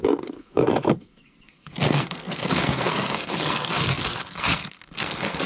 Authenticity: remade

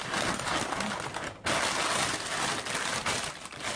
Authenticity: recorded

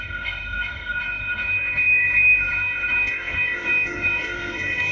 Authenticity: remade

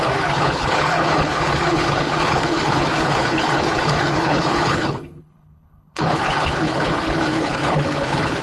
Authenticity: remade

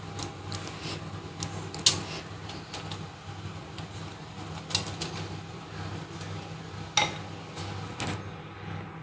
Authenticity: recorded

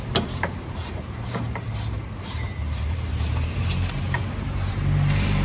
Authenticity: remade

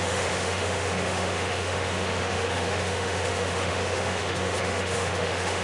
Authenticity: remade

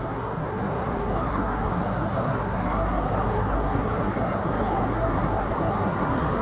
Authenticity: remade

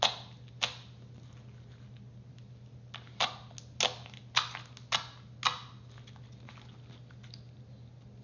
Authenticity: recorded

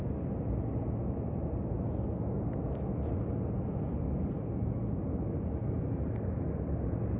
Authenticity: recorded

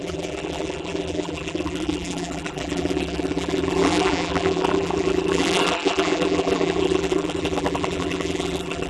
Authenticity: remade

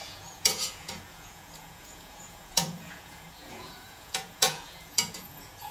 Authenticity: remade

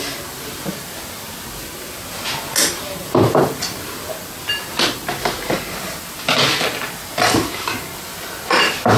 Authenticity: recorded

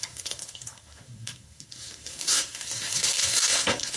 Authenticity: remade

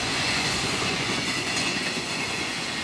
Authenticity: remade